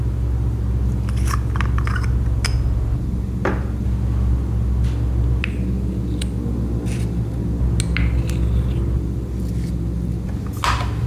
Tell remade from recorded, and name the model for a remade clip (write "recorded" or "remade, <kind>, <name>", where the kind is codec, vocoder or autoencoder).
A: recorded